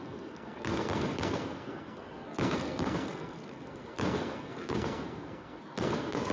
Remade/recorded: remade